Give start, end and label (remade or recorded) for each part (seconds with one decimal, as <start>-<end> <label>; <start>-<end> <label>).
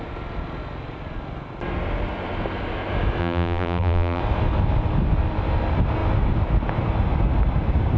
0.0-3.2 recorded; 3.2-4.2 remade; 4.2-8.0 recorded